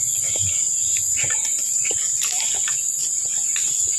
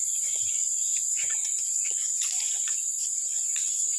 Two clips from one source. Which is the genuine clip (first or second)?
first